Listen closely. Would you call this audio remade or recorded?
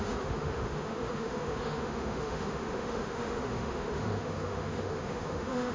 remade